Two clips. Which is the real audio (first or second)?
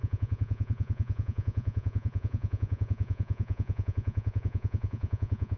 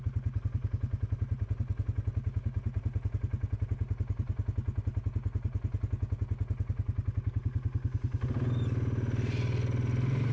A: second